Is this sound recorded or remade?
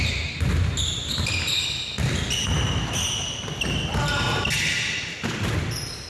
recorded